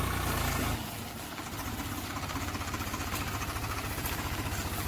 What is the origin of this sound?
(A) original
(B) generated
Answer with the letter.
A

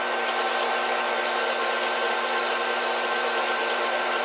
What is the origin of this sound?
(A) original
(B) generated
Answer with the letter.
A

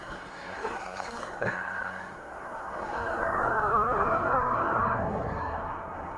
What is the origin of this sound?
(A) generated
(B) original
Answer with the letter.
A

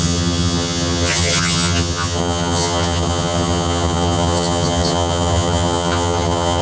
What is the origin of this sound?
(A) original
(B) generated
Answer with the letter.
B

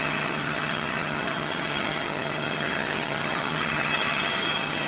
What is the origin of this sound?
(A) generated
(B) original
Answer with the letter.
A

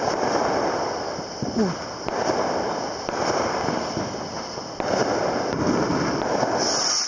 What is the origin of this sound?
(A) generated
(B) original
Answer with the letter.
B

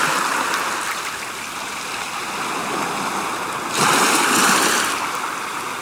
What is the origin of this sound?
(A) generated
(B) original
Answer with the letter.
B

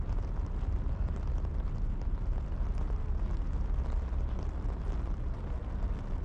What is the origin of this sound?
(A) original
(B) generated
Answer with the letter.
B